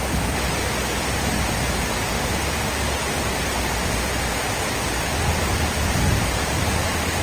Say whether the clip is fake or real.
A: real